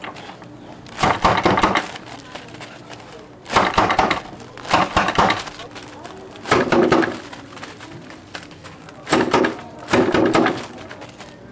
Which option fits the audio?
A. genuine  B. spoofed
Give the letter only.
A